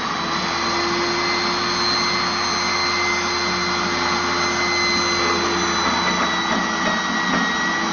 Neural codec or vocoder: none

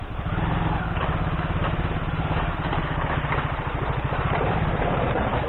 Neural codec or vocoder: vocoder, BigVGAN v2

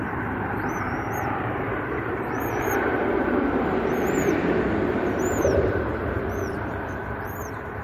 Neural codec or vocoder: vocoder, BigVGAN v2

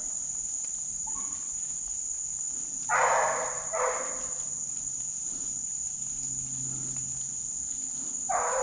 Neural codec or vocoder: none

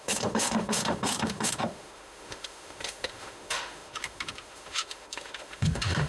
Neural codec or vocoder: autoencoder, DAC-VAE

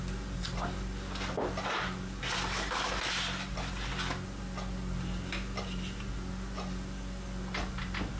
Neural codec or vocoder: none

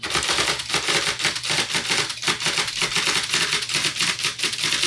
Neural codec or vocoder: none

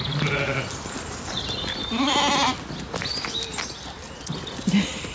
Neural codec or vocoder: none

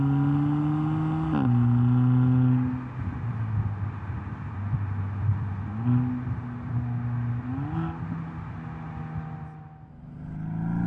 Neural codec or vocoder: none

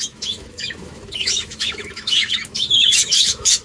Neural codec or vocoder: autoencoder, DAC-VAE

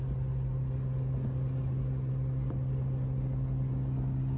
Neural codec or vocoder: none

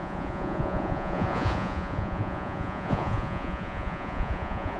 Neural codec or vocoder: vocoder, Vocos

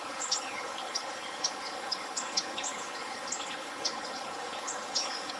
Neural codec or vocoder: codec, HILCodec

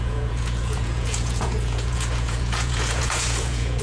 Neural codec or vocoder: vocoder, Vocos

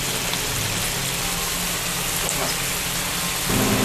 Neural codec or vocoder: none